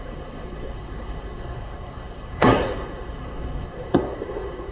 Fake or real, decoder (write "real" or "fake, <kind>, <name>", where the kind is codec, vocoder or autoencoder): fake, codec, SNAC